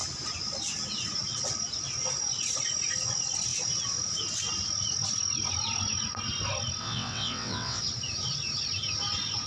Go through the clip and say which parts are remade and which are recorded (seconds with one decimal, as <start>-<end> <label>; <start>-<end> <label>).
0.0-6.8 recorded; 6.8-7.8 remade; 7.8-9.5 recorded